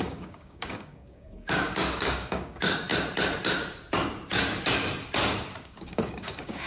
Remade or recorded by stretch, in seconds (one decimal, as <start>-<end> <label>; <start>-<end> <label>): 0.0-2.9 remade; 2.9-5.6 recorded; 5.6-6.7 remade

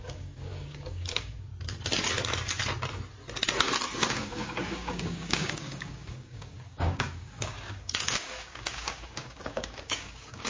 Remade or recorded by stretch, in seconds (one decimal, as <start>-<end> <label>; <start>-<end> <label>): 0.0-1.5 remade; 1.5-4.1 recorded; 4.1-10.5 remade

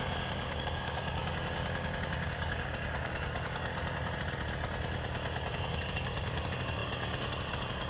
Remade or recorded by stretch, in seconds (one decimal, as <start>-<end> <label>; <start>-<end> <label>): 0.0-3.7 remade; 3.7-5.5 recorded; 5.5-7.9 remade

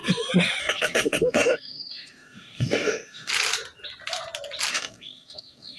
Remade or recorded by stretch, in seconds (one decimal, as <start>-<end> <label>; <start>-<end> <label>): 0.0-0.6 recorded; 0.6-3.3 remade; 3.3-4.7 recorded; 4.7-5.8 remade

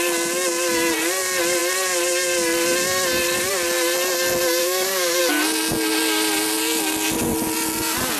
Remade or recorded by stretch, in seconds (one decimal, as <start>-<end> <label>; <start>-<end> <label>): 0.0-4.6 recorded; 4.6-5.2 remade; 5.2-8.2 recorded

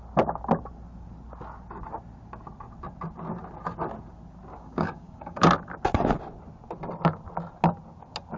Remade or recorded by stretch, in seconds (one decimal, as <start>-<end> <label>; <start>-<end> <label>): 0.0-4.5 recorded; 4.5-5.5 remade; 5.5-8.4 recorded

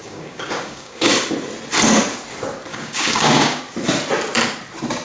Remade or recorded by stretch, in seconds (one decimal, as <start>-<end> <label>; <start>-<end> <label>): 0.0-1.1 remade; 1.1-2.7 recorded; 2.7-3.6 remade; 3.6-5.0 recorded

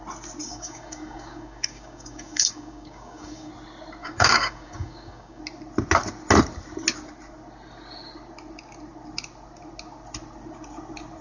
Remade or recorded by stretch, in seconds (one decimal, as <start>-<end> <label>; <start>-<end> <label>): 0.0-0.4 recorded; 0.4-3.5 remade; 3.5-4.0 recorded; 4.0-5.4 remade; 5.4-11.2 recorded